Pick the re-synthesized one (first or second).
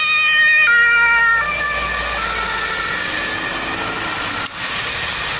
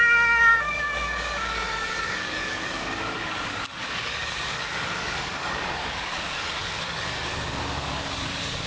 second